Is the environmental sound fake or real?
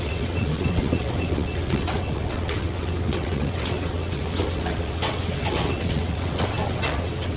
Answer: fake